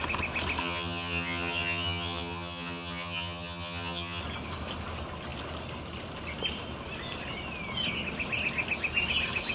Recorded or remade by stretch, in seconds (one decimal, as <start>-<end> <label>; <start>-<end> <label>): 0.0-0.6 recorded; 0.6-4.2 remade; 4.2-9.5 recorded